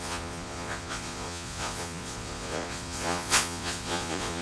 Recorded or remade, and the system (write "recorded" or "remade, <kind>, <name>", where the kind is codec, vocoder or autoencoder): remade, vocoder, Vocos